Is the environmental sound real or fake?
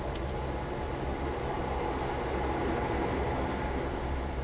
real